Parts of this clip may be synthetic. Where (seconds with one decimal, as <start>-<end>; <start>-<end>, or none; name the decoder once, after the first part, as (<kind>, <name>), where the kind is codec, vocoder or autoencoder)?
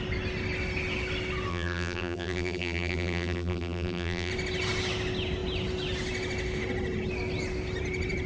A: 1.5-4.3 (vocoder, BigVGAN v2)